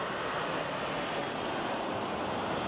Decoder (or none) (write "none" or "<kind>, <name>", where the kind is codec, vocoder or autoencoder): none